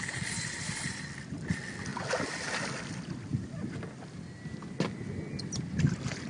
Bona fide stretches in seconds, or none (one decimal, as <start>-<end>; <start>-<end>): 0.0-6.3